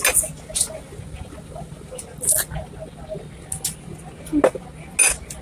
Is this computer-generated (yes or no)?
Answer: no